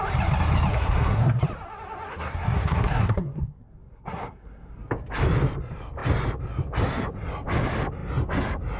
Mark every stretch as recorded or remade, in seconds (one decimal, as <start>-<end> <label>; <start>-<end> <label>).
0.0-0.7 recorded; 0.7-1.4 remade; 1.4-2.1 recorded; 2.1-4.7 remade; 4.7-8.8 recorded